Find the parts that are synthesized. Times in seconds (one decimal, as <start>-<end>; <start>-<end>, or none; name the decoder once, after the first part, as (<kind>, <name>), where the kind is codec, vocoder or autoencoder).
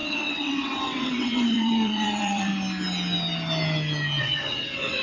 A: 0.0-2.5 (vocoder, WaveNeXt); 4.2-5.0